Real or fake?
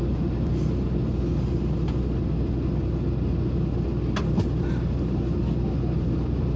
real